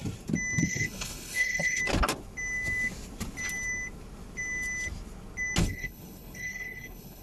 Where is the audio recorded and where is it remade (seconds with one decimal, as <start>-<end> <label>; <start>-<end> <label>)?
0.0-0.6 recorded; 0.6-1.8 remade; 1.8-5.6 recorded; 5.6-7.2 remade